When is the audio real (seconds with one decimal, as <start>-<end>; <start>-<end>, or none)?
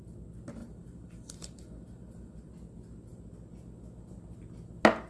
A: 0.0-0.6; 2.5-5.1